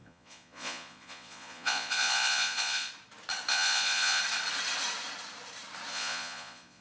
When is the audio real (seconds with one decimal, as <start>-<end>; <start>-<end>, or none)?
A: 2.9-3.5; 4.2-5.9